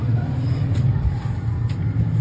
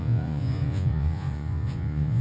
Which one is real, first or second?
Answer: first